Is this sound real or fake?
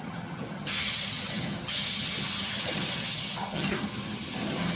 fake